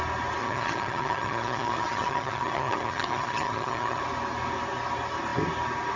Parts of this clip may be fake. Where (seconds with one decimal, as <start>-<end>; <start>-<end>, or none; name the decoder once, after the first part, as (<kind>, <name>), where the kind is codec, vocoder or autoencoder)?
0.4-4.0 (vocoder, HiFi-GAN)